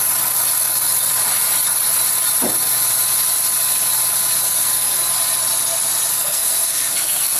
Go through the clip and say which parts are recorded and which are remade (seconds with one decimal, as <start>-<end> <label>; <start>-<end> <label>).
0.0-4.4 recorded; 4.4-5.1 remade; 5.1-6.1 recorded; 6.1-7.4 remade